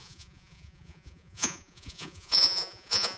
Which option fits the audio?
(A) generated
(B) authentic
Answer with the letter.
A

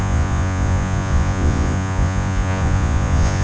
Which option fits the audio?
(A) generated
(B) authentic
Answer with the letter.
A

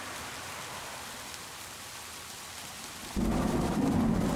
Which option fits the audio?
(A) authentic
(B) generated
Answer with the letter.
A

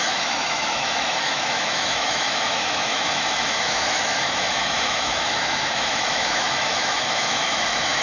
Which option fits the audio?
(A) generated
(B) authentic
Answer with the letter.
A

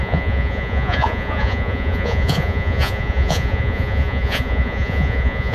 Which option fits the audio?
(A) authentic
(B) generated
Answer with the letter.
B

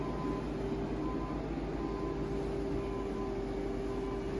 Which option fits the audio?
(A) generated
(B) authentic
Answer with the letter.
B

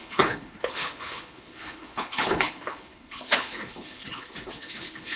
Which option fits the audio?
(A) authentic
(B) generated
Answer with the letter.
B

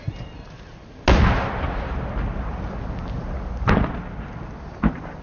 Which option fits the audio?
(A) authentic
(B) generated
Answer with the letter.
A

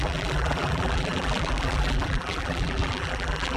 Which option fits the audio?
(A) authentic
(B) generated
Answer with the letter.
B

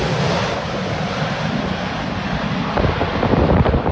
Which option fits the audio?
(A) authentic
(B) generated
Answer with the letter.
A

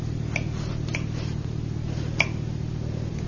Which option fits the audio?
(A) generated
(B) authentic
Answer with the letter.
B